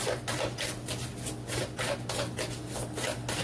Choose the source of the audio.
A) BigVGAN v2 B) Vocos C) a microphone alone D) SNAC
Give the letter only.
C